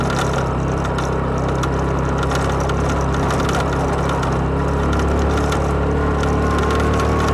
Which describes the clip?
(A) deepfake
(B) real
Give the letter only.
B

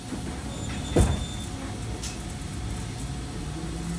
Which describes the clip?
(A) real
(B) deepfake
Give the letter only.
A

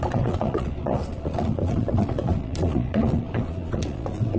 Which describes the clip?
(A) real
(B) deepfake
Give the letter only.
B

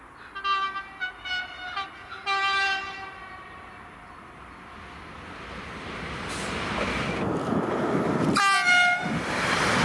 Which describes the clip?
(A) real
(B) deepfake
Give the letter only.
A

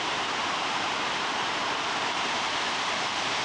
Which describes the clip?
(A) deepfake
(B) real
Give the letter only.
A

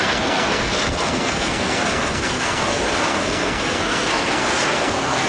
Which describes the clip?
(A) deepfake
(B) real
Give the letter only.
A